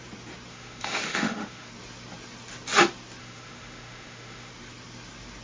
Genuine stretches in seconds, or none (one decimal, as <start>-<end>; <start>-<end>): 0.0-0.5; 1.7-3.2; 4.5-5.4